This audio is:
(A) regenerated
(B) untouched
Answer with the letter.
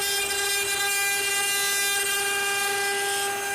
B